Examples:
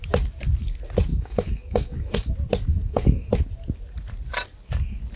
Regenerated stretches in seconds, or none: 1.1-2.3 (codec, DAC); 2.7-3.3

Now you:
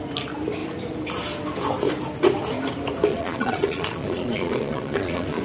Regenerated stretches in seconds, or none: 3.1-5.4 (vocoder, Vocos)

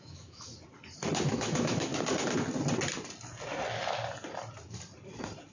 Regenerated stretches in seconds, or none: 0.0-0.5 (autoencoder, DAC-VAE); 1.3-1.9

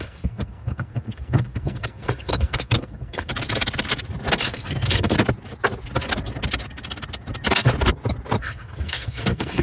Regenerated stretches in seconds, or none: 0.0-3.3 (codec, SNAC); 4.4-5.1; 8.4-9.6